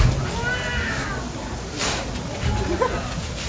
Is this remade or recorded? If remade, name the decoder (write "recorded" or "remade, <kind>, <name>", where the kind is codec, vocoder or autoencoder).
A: recorded